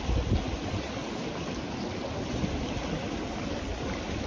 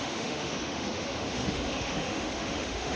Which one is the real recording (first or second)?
first